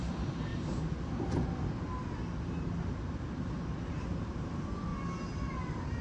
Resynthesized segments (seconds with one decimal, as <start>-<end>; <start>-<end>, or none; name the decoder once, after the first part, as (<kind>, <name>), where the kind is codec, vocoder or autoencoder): 0.0-0.5 (vocoder, BigVGAN v2); 3.9-4.9